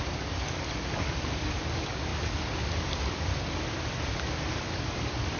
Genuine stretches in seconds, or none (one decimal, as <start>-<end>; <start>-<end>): 3.3-4.5